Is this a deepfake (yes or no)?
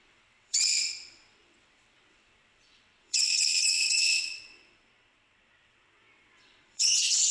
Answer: yes